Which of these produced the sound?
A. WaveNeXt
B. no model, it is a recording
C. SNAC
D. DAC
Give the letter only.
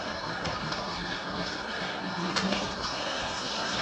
C